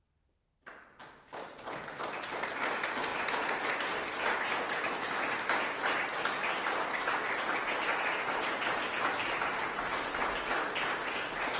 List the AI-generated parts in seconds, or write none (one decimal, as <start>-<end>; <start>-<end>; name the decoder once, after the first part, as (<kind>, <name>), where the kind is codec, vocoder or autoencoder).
none